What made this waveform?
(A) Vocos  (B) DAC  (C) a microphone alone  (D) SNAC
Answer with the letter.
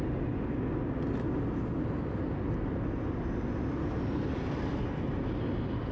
C